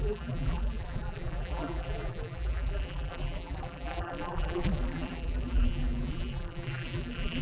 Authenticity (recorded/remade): remade